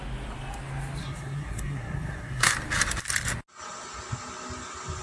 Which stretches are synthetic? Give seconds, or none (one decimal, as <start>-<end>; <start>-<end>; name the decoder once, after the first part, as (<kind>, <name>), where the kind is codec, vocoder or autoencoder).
1.0-2.5 (codec, SNAC)

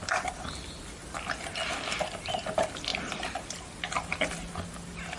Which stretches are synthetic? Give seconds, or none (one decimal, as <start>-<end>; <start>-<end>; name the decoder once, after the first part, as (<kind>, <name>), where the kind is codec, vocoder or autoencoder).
none

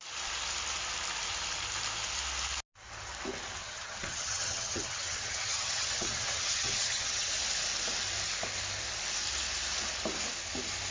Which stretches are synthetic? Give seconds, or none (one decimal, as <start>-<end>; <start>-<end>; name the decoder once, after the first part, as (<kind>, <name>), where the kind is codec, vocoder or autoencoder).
3.6-7.3 (vocoder, HiFi-GAN)

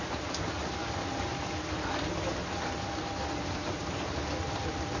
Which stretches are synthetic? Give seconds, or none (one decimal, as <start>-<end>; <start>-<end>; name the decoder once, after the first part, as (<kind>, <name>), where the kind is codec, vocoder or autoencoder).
none

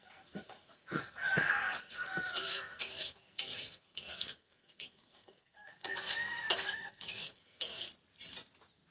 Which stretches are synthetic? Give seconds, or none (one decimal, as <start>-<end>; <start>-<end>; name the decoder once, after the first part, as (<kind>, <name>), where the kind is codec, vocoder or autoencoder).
0.0-7.9 (codec, SNAC)

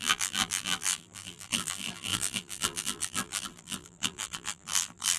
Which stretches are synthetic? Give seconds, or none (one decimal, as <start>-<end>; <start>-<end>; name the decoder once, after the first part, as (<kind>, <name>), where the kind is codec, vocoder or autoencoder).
0.0-5.2 (vocoder, BigVGAN v2)

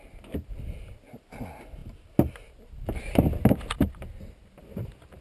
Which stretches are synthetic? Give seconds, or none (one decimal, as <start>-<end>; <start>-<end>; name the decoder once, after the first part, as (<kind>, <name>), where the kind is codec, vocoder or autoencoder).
none